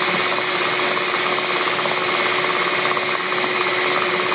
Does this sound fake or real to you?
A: real